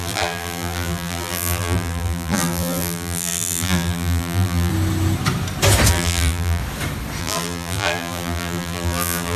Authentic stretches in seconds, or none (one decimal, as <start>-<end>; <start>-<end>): 4.7-5.9; 6.6-7.2